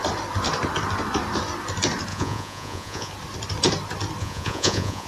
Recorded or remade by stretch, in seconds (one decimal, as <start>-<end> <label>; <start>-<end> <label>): 0.0-2.1 recorded; 2.1-3.1 remade; 3.1-4.2 recorded; 4.2-5.1 remade